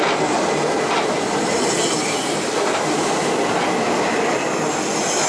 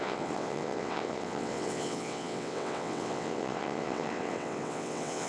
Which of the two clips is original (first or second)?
first